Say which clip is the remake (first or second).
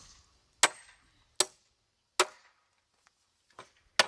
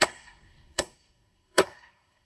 second